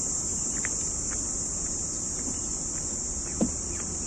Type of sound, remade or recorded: recorded